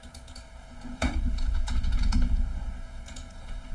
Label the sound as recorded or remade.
remade